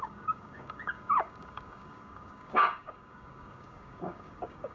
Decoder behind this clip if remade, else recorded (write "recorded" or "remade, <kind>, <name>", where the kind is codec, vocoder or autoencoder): remade, codec, DAC